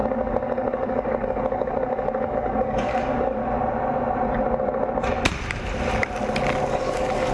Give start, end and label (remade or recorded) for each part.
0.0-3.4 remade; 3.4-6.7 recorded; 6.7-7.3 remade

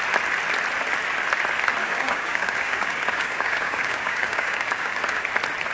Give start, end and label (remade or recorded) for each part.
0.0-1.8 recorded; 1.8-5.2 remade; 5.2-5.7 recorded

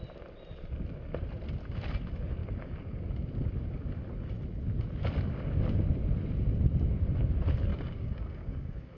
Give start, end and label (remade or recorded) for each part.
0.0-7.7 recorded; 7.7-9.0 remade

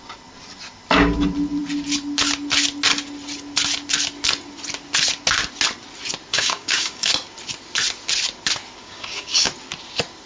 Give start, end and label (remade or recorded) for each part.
0.0-6.3 recorded; 6.3-7.1 remade; 7.1-8.8 recorded; 8.8-9.5 remade; 9.5-10.3 recorded

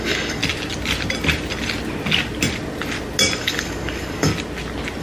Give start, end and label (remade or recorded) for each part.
0.0-0.4 remade; 0.4-3.4 recorded; 3.4-4.3 remade; 4.3-5.0 recorded

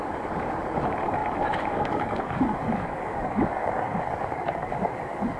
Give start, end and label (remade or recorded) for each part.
0.0-5.4 remade

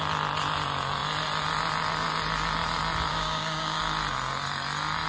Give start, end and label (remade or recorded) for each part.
0.0-3.1 recorded; 3.1-3.8 remade; 3.8-5.1 recorded